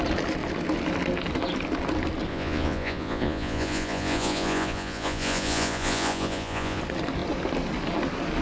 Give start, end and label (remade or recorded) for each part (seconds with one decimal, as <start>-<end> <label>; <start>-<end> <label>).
0.0-2.3 recorded; 2.3-6.8 remade; 6.8-8.4 recorded